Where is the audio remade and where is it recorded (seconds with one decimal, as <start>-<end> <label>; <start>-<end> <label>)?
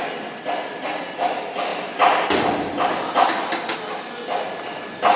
0.0-5.2 recorded